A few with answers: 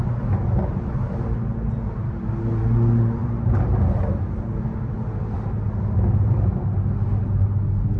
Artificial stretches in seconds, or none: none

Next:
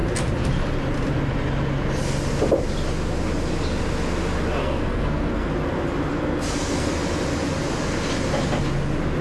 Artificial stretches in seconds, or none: 4.6-5.5 (codec, SNAC); 6.1-6.9

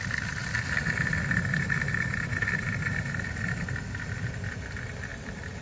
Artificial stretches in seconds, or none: none

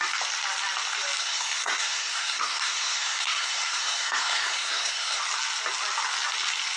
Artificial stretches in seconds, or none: 1.2-5.2 (codec, SNAC)

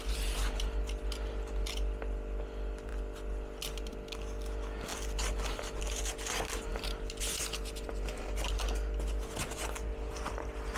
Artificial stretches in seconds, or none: none

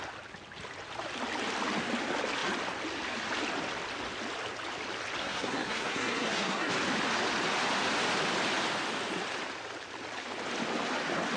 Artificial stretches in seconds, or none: 5.2-6.7 (codec, SNAC)

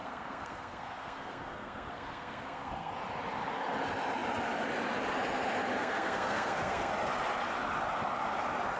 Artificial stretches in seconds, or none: 0.0-2.9 (codec, SNAC); 5.8-6.9

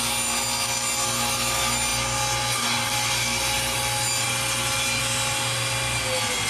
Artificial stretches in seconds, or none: none